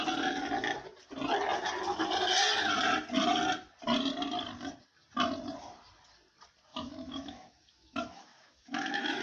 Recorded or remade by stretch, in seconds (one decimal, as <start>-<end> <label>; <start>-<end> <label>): 0.0-6.7 recorded; 6.7-9.2 remade